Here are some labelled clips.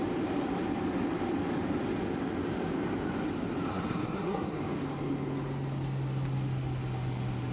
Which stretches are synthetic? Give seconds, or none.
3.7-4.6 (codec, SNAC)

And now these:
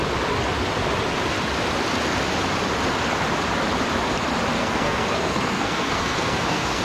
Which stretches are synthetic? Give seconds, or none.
4.6-6.8 (codec, SNAC)

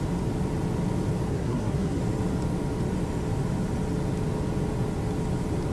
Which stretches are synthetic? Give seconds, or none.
1.3-2.0 (codec, SNAC)